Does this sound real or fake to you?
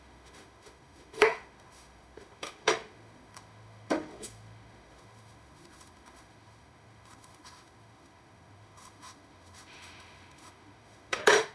fake